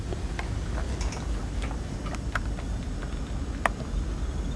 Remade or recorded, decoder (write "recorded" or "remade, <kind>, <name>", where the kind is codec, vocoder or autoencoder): recorded